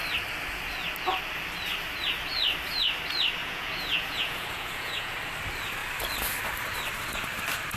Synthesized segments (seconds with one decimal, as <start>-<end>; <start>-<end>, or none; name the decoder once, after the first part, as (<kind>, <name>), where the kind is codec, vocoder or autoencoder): 3.4-5.1 (vocoder, Vocos)